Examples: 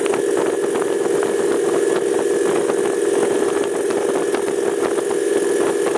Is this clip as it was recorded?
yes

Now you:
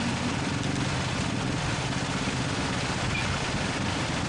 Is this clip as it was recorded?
yes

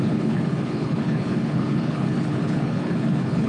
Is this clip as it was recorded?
no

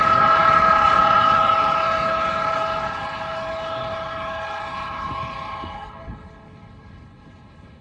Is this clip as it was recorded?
no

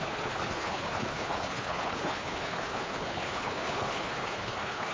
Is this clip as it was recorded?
no